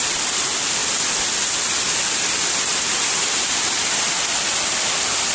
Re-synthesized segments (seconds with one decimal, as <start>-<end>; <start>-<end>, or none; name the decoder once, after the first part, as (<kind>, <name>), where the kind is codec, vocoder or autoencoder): 0.0-5.3 (vocoder, BigVGAN v2)